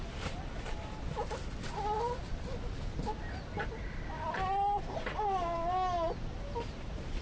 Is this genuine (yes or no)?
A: yes